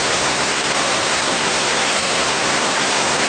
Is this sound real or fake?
fake